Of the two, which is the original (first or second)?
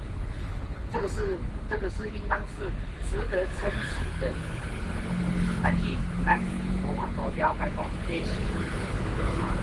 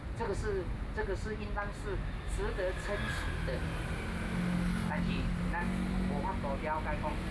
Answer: second